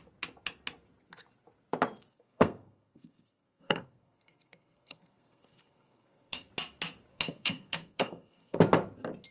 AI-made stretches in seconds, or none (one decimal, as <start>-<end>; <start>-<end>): 2.1-6.5; 7.1-8.6